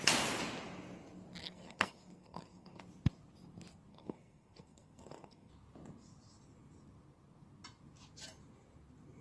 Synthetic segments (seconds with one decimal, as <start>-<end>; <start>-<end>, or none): 1.4-2.8; 3.9-5.5